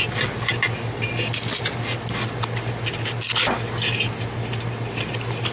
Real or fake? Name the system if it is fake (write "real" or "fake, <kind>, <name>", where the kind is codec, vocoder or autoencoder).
real